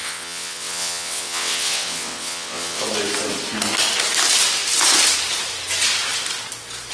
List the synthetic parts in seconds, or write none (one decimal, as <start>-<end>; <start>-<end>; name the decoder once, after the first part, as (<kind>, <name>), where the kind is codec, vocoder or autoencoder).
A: 0.0-2.8 (vocoder, WaveNeXt)